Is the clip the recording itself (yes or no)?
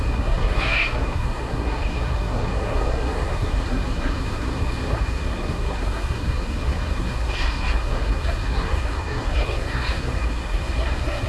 no